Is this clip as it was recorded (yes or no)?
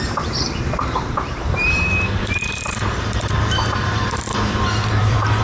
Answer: no